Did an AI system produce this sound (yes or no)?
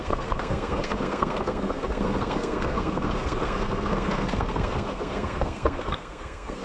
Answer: yes